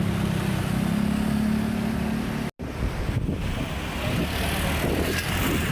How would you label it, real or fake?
real